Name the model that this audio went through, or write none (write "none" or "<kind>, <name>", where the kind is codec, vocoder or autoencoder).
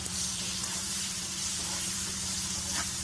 vocoder, BigVGAN v2